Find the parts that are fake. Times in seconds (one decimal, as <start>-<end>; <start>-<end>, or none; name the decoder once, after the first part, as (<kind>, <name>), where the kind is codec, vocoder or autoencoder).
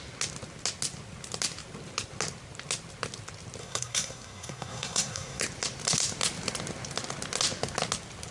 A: 3.6-5.4 (codec, SNAC)